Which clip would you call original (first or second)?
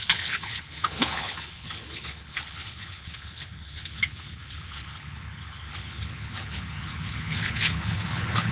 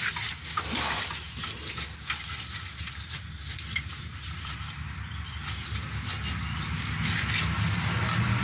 second